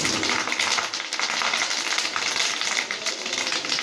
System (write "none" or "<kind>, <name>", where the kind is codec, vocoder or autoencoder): none